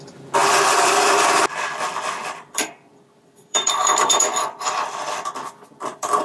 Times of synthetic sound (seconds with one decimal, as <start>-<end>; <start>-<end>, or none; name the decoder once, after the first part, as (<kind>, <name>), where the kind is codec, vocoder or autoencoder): 0.4-1.4 (vocoder, BigVGAN v2); 2.2-6.2